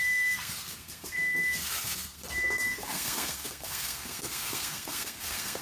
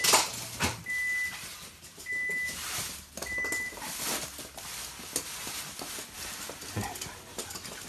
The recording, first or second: second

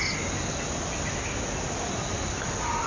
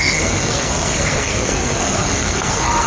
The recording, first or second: first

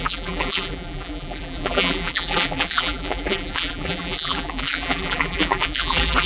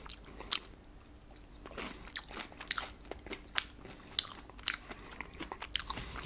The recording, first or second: second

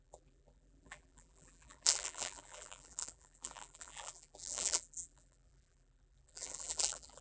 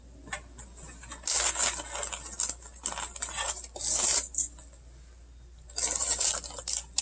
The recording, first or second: second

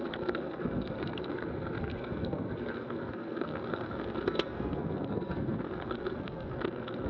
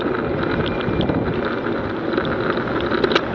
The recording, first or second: second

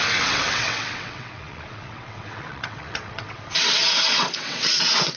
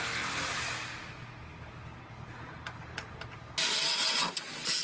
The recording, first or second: second